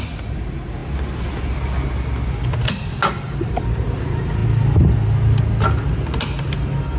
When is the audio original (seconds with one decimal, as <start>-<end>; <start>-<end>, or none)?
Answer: 0.0-7.0